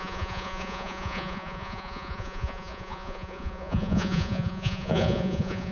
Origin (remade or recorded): remade